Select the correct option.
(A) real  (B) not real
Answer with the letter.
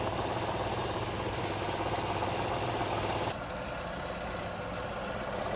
A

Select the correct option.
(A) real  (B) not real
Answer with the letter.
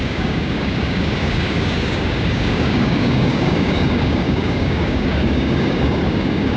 B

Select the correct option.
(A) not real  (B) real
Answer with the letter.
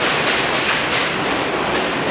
B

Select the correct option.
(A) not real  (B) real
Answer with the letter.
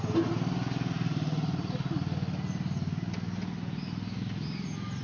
B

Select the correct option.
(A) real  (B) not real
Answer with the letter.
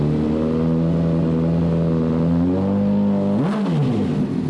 A